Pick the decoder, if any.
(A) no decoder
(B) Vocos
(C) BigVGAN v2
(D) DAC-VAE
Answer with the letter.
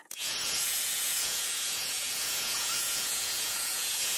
B